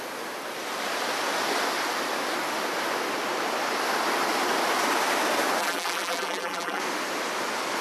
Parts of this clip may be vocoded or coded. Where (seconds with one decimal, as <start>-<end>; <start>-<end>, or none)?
5.6-6.8

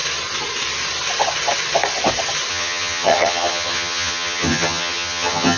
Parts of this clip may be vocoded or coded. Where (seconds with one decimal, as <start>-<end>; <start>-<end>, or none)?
2.5-5.6

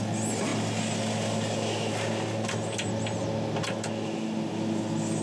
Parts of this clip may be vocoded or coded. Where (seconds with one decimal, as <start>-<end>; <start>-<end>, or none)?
none